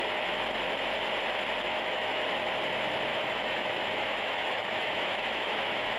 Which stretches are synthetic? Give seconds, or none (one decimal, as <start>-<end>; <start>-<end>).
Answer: 1.6-2.3; 3.1-6.0